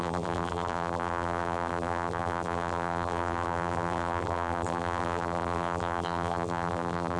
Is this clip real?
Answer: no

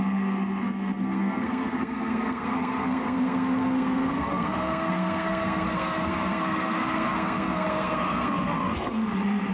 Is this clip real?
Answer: no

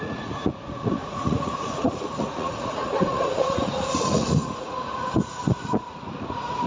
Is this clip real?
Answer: no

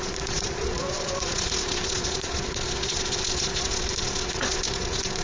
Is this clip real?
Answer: no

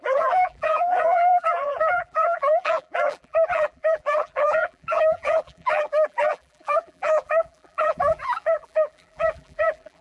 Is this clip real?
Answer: no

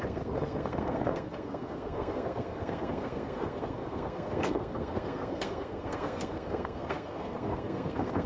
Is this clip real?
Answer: no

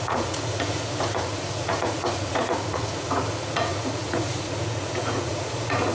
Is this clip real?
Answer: no